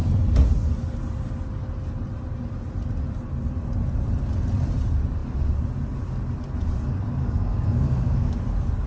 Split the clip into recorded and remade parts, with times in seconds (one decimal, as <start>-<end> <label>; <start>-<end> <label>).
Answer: 0.0-7.2 recorded; 7.2-8.3 remade; 8.3-8.9 recorded